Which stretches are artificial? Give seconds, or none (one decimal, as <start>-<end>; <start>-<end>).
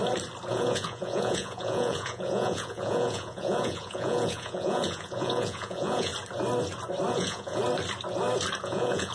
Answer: 0.5-6.1; 7.1-7.6; 8.6-9.1